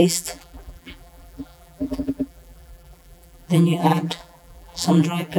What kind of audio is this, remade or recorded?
remade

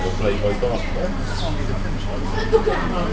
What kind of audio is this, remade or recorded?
recorded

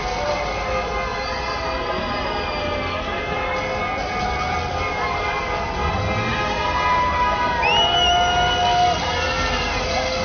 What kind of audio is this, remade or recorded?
recorded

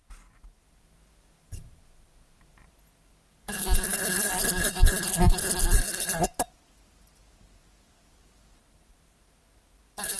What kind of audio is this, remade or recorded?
recorded